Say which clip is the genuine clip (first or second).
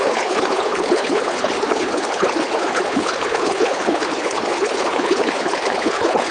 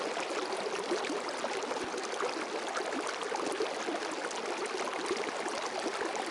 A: second